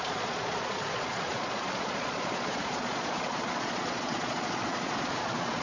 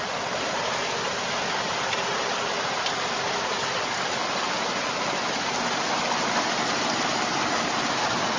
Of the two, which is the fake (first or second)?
first